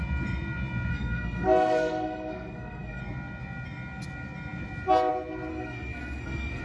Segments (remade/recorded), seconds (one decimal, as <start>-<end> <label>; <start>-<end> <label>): 0.0-0.9 recorded; 0.9-3.0 remade; 3.0-5.5 recorded; 5.5-6.6 remade